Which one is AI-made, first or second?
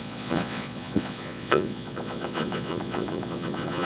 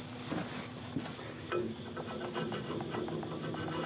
first